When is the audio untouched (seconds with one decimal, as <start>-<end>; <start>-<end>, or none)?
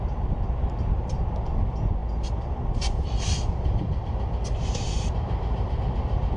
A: 0.0-2.0; 5.8-6.4